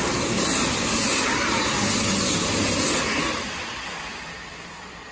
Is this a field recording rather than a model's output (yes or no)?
yes